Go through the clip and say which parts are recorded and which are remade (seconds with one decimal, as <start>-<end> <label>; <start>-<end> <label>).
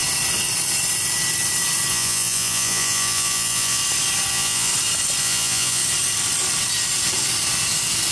0.0-1.9 recorded; 1.9-3.8 remade; 3.8-4.3 recorded; 4.3-4.7 remade; 4.7-5.2 recorded; 5.2-5.8 remade; 5.8-8.1 recorded